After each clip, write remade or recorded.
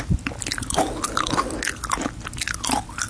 recorded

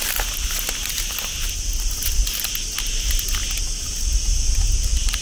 recorded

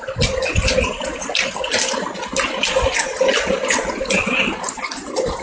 recorded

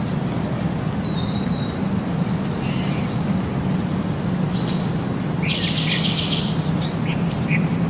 recorded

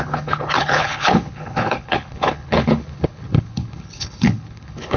remade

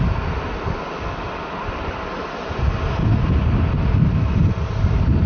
recorded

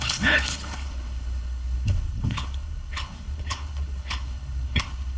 remade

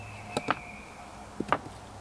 recorded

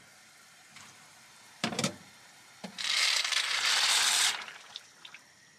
remade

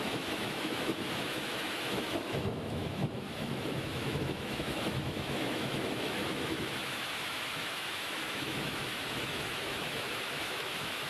remade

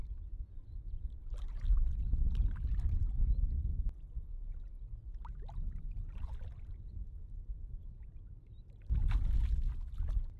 recorded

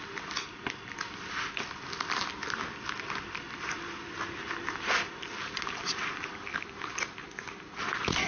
recorded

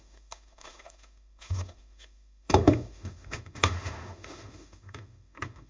remade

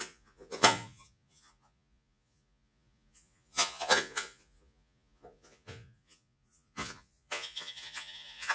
remade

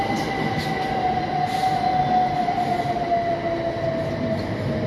recorded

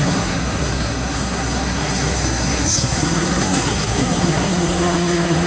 remade